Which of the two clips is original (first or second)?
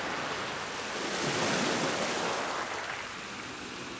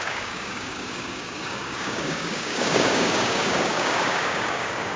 first